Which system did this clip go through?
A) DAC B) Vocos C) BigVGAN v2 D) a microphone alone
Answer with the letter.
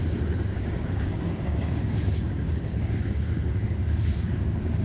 A